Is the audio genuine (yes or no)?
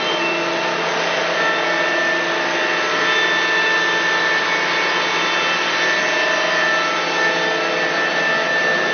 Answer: yes